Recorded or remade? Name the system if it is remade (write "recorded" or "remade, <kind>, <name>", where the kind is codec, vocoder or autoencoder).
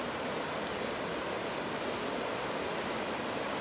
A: recorded